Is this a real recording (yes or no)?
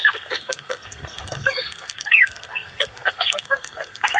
no